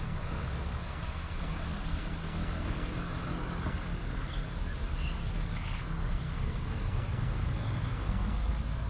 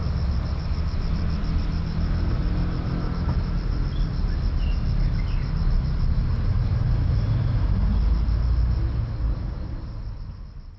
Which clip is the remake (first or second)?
first